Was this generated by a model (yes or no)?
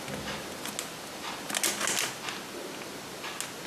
no